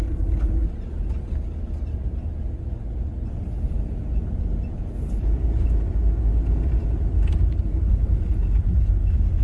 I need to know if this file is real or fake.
real